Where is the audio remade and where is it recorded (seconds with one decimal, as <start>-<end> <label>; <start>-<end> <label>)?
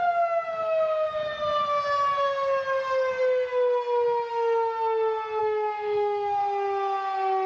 0.0-1.3 remade; 1.3-5.4 recorded; 5.4-6.4 remade; 6.4-7.5 recorded